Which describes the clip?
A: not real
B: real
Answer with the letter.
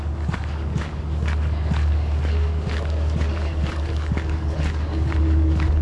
A